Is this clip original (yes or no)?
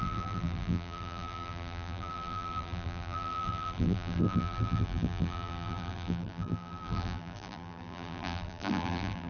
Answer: no